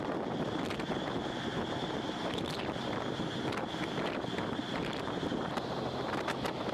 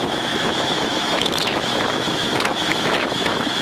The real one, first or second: first